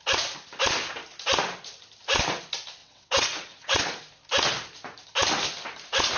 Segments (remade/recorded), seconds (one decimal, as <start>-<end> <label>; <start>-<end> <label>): 0.0-2.8 recorded; 2.8-3.8 remade; 3.8-6.2 recorded